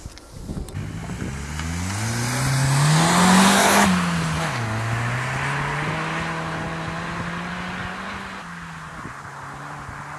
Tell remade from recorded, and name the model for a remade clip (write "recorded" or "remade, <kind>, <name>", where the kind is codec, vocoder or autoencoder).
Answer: recorded